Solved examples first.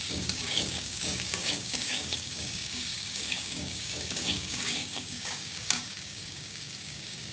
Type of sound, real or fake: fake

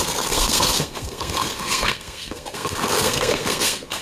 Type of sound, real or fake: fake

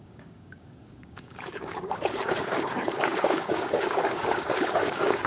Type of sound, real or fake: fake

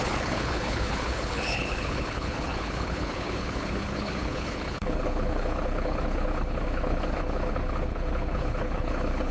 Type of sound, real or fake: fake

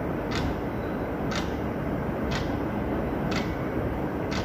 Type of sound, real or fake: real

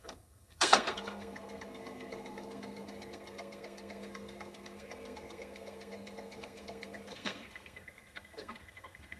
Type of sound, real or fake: fake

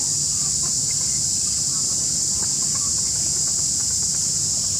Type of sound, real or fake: real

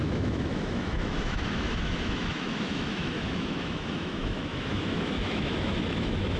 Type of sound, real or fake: fake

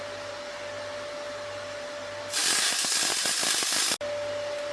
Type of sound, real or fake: real